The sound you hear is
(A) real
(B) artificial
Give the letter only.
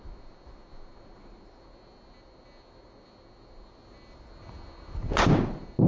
A